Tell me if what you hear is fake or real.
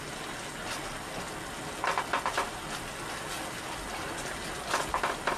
real